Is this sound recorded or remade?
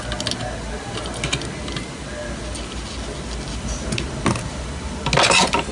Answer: recorded